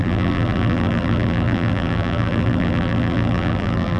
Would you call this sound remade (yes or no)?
yes